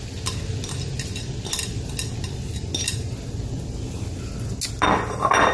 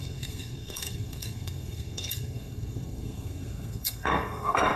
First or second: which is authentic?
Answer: first